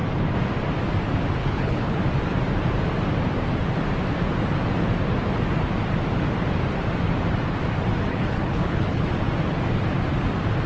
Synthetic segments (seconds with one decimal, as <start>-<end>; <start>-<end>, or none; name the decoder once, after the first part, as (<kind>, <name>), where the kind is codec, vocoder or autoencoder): 1.4-2.0 (codec, HILCodec); 8.1-9.1

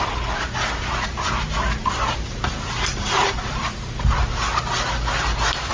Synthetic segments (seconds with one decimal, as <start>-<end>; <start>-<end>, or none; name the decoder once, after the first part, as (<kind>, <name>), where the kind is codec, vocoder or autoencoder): 1.8-3.6 (vocoder, BigVGAN v2)

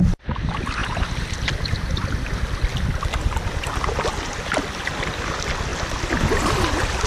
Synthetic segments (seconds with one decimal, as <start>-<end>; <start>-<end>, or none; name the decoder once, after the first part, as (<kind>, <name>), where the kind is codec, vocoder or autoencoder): none

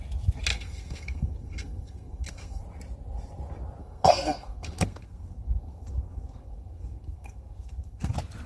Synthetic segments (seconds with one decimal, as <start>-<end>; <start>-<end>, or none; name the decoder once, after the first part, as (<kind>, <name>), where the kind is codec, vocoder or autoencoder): 0.5-2.6 (codec, SNAC); 3.8-8.1

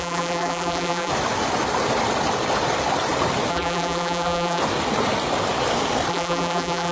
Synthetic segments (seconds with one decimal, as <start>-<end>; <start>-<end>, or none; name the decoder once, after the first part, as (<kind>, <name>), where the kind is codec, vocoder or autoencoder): 0.0-1.1 (vocoder, BigVGAN v2); 3.5-4.6; 6.1-6.9

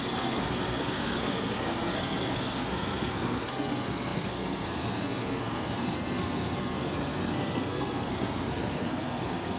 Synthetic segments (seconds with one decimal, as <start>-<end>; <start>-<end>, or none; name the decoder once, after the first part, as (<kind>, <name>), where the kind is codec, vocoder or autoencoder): 0.0-9.6 (codec, SNAC)

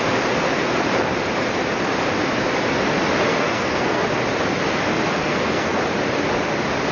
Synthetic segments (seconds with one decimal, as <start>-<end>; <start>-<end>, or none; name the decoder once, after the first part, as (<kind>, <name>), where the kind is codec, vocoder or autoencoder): 3.3-4.0 (codec, SNAC); 5.2-5.8